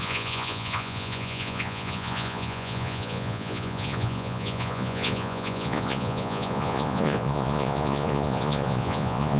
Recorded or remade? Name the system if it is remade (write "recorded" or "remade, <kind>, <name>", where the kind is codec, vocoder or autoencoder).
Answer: remade, vocoder, Vocos